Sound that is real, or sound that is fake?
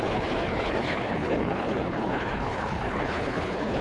fake